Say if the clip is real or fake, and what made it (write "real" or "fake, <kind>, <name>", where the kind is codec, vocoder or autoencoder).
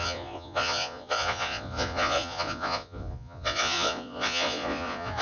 fake, vocoder, Vocos